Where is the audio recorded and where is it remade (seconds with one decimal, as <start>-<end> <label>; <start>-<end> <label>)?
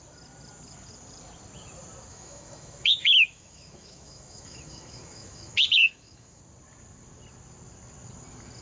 0.0-2.1 recorded; 2.1-6.4 remade; 6.4-8.6 recorded